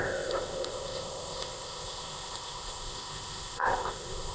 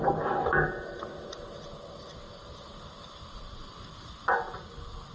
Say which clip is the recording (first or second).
second